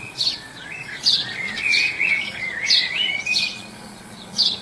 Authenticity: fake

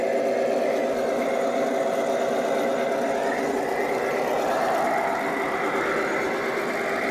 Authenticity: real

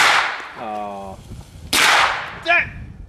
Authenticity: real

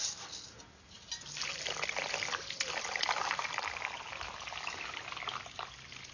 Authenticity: real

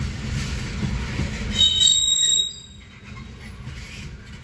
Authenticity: real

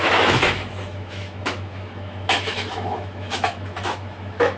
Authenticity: fake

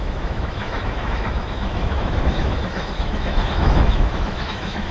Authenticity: fake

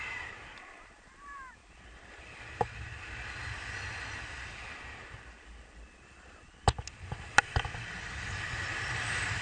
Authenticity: fake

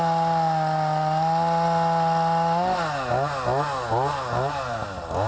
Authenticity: real